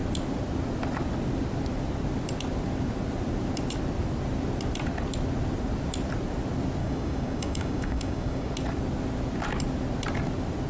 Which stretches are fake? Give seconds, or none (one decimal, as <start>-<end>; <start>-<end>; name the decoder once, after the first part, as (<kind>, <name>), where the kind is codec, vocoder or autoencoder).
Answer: 6.8-8.5 (codec, DAC)